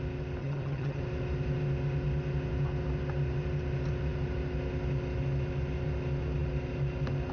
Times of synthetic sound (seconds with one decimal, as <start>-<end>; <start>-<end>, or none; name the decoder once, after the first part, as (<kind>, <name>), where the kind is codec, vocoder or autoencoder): 0.4-1.0 (vocoder, HiFi-GAN)